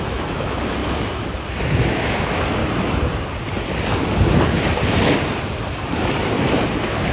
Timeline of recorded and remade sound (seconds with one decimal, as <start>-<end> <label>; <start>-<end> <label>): 0.0-2.6 remade; 2.6-7.1 recorded